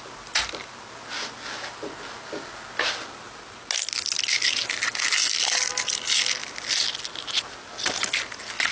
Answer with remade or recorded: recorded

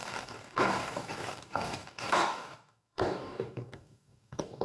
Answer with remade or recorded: remade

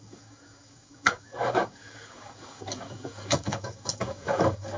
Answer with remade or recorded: remade